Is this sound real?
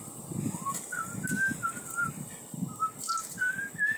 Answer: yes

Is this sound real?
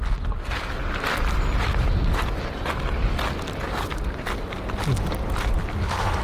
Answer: yes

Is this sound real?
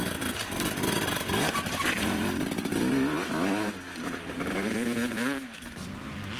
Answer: yes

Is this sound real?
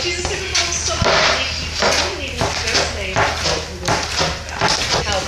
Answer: yes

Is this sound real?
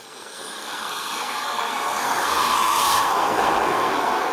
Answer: no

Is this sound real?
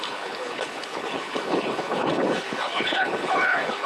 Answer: no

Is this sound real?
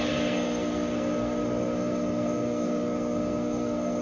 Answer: no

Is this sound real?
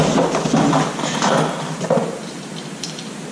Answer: yes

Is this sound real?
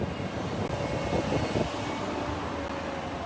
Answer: yes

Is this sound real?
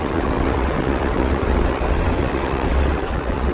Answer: no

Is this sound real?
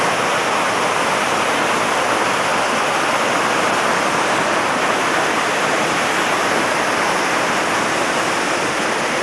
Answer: yes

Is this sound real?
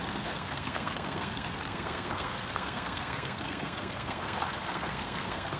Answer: no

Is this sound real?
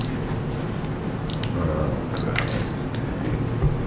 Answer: yes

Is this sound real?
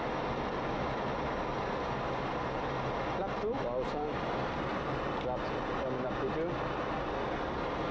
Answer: yes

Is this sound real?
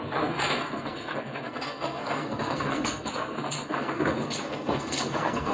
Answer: no